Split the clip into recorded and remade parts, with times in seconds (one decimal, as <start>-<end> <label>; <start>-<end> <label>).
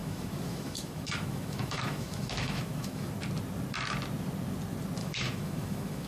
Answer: 0.0-3.1 remade; 3.1-5.0 recorded; 5.0-6.1 remade